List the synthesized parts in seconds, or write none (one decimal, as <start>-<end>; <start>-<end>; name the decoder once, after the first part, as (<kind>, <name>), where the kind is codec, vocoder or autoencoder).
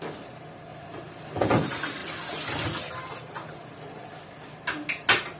0.7-1.5 (vocoder, BigVGAN v2)